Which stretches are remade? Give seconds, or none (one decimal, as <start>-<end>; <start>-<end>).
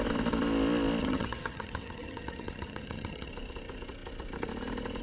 1.0-3.3